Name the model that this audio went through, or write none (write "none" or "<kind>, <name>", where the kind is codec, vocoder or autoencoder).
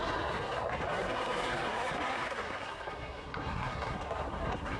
codec, SNAC